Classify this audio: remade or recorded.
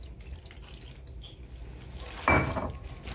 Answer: recorded